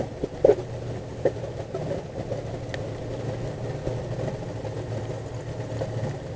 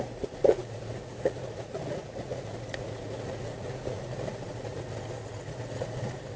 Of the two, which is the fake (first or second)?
second